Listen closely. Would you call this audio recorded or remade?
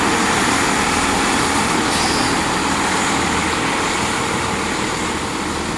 recorded